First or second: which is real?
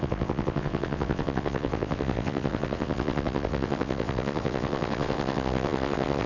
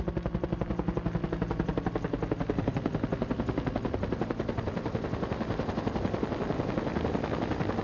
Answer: second